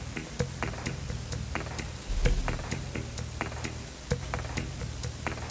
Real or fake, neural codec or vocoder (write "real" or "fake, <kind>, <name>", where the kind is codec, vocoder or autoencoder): real